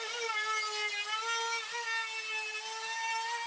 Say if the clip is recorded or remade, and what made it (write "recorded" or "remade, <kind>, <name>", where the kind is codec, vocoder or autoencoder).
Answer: recorded